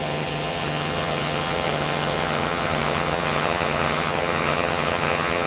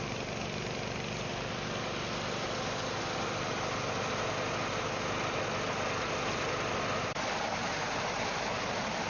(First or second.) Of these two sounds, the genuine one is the second